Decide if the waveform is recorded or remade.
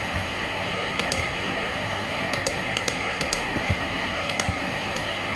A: remade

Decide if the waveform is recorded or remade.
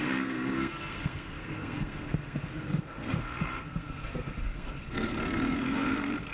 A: remade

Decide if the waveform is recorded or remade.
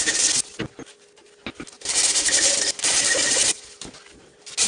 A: recorded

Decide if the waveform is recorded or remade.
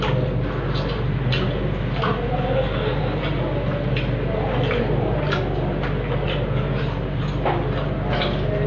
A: recorded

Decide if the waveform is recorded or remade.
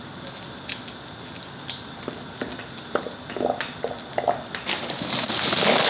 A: recorded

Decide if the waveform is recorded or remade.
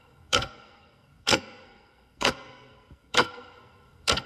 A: remade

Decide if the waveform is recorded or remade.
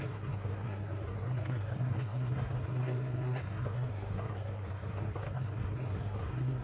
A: remade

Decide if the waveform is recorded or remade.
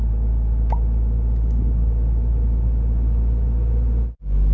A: recorded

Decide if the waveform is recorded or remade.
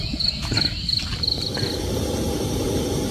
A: recorded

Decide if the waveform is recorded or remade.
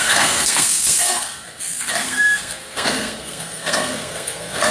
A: remade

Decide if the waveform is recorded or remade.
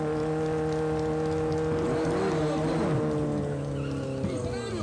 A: recorded